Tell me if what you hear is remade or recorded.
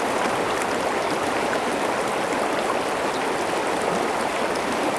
recorded